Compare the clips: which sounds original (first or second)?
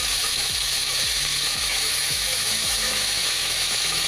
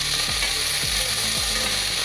second